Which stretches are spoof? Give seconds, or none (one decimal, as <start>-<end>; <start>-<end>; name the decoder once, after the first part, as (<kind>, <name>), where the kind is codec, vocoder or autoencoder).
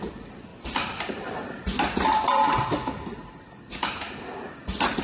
0.5-3.5 (vocoder, BigVGAN v2)